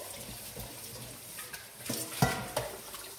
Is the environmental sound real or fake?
real